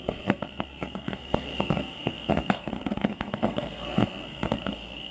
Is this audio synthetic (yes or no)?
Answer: yes